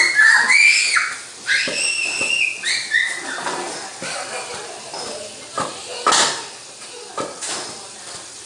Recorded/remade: recorded